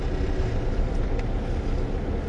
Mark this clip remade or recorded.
recorded